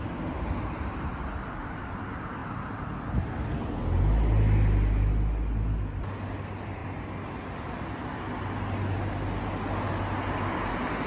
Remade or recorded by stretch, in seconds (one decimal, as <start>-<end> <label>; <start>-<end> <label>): 0.0-11.1 recorded